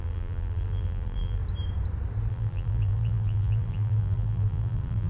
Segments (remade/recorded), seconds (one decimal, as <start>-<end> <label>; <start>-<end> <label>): 0.0-1.4 remade; 1.4-2.3 recorded; 2.3-5.1 remade